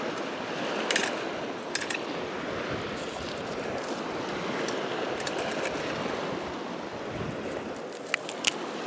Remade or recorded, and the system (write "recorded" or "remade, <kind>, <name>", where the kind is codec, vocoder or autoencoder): recorded